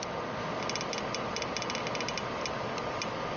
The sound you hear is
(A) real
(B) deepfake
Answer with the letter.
A